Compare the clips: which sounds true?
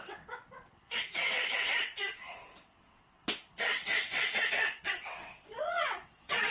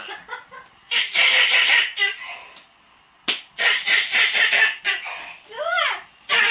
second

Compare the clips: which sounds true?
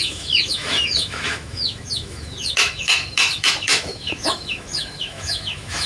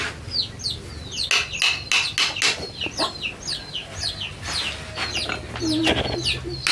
second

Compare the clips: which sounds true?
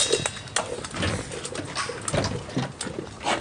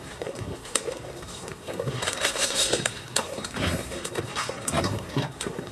first